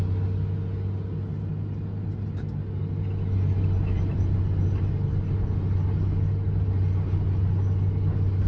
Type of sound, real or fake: real